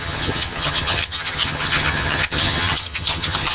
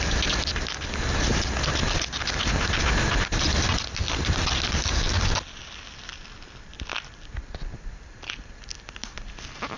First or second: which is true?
second